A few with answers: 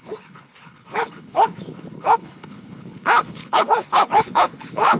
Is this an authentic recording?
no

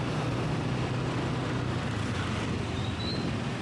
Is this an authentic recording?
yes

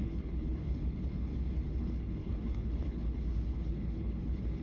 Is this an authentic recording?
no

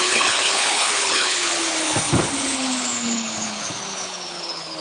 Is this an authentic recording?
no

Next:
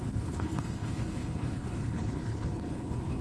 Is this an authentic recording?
no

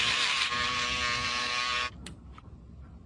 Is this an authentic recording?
yes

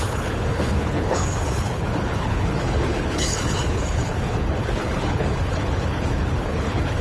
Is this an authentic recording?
no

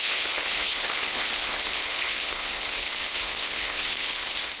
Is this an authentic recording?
no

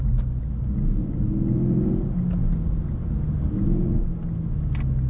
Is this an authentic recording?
yes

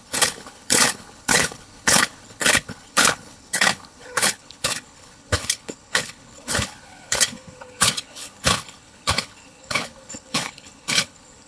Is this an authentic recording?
no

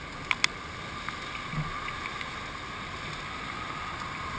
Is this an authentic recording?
yes